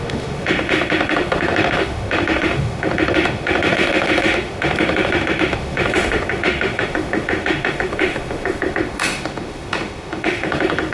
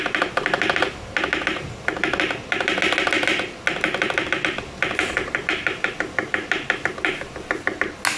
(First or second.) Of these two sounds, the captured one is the second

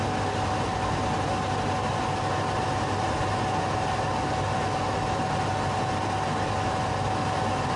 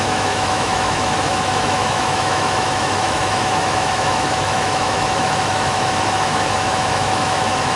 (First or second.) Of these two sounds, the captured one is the first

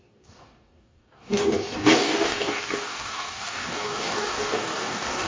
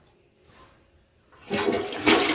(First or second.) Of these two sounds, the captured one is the second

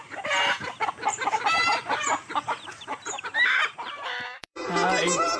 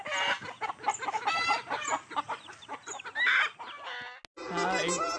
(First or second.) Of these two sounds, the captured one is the second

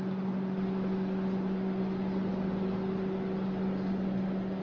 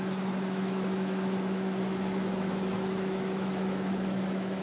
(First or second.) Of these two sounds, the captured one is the first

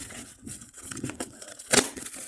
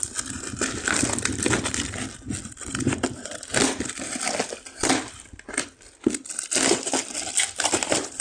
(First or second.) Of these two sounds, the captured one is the second